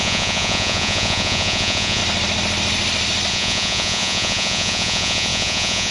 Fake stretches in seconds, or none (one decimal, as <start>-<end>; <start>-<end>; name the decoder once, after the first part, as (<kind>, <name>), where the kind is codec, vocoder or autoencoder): 0.0-2.0 (vocoder, Vocos); 3.3-5.9